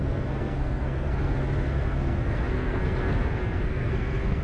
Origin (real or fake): fake